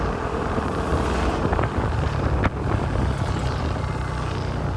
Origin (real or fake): real